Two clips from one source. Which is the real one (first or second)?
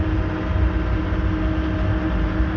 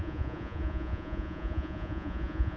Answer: first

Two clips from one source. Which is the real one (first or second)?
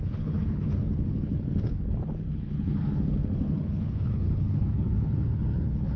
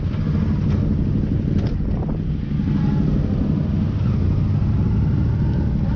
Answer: second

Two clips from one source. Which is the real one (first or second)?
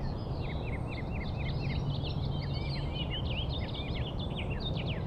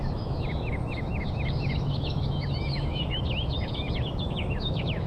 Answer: first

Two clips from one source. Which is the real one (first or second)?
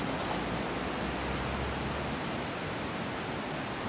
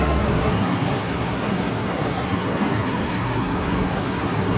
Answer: first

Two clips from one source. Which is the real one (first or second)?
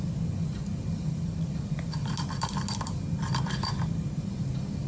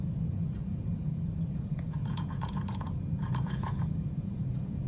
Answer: first